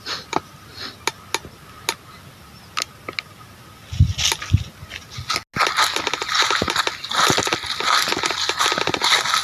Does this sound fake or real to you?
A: real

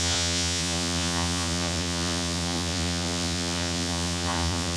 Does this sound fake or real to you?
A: fake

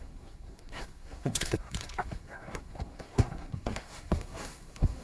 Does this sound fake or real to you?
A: fake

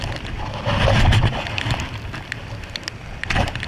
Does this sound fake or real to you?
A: real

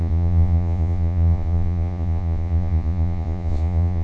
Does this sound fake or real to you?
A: fake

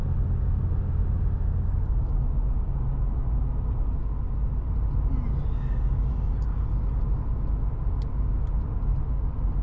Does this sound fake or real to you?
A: real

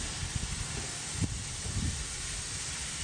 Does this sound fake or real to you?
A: real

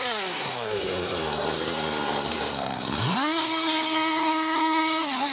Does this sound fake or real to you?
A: fake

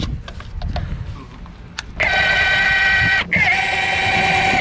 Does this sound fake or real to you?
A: real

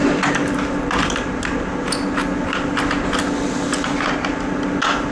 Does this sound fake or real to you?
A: real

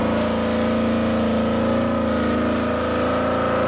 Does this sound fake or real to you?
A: real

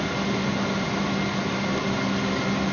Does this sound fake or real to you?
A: real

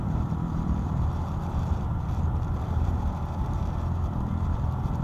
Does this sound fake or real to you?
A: fake